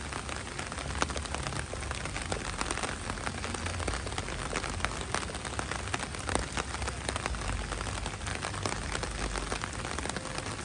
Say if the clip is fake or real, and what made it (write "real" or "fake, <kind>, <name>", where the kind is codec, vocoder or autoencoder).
real